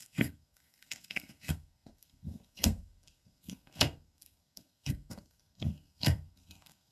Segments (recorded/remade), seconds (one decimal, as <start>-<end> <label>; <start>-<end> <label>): 0.0-6.9 remade